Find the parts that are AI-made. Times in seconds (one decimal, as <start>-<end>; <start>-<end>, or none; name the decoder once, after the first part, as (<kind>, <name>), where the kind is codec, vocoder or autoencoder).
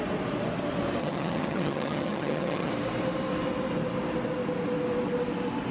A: 1.0-2.7 (vocoder, HiFi-GAN)